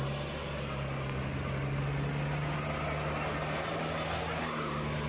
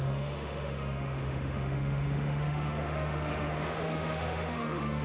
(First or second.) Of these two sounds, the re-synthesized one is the second